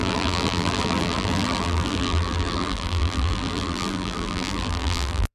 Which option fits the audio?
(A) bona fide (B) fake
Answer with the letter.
B